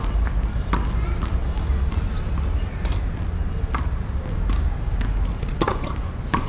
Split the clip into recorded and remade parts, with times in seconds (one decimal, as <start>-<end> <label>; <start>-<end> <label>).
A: 0.0-5.7 recorded; 5.7-6.5 remade